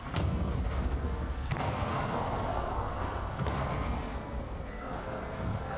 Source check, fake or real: fake